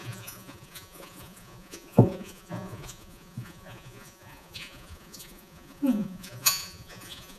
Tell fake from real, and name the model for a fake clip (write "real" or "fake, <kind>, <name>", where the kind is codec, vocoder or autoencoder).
fake, vocoder, Vocos